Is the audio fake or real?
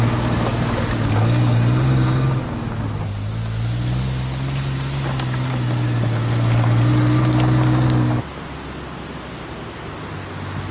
real